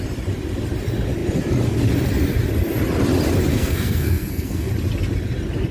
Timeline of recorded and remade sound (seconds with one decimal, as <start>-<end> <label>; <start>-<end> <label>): 0.0-3.5 recorded; 3.5-4.7 remade; 4.7-5.7 recorded